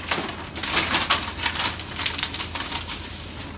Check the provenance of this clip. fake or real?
real